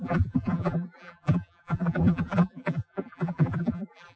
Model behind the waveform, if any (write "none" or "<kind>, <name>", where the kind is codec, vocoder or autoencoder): vocoder, BigVGAN v2